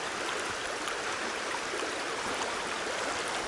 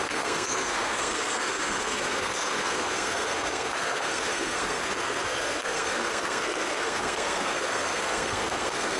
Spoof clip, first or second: second